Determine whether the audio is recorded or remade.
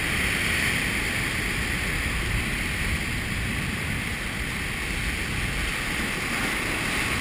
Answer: recorded